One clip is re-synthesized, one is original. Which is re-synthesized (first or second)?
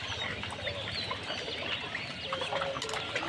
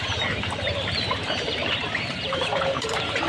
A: second